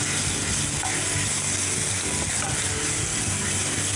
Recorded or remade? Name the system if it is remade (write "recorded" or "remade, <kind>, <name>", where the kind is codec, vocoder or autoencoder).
recorded